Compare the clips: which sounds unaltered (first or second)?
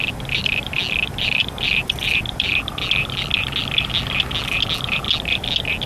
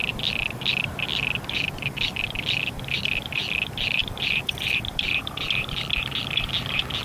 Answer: first